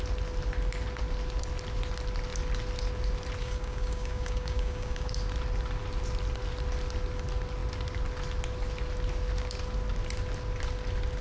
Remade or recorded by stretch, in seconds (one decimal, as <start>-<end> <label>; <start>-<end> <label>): 0.0-3.4 recorded; 3.4-5.1 remade; 5.1-11.2 recorded